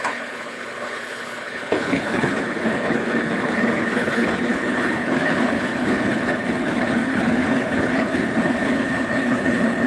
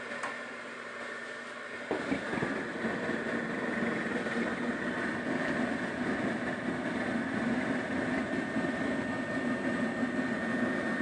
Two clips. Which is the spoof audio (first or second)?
first